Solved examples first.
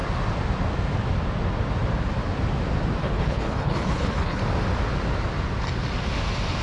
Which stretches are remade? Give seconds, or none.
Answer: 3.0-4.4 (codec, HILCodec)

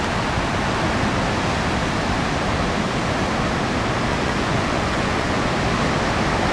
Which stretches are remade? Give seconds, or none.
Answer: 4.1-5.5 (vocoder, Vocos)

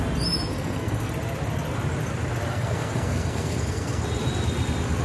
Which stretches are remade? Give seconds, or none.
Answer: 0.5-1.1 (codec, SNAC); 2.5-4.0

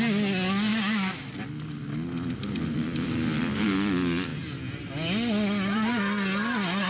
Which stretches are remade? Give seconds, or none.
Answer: 0.7-1.3 (vocoder, BigVGAN v2)

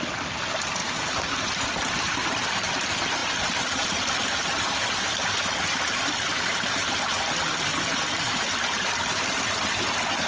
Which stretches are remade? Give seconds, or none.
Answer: 0.0-0.8 (vocoder, BigVGAN v2); 1.9-3.2; 7.0-10.3

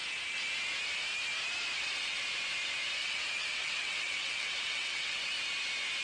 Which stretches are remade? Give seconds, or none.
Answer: 1.7-2.2 (vocoder, WaveNeXt); 3.0-5.3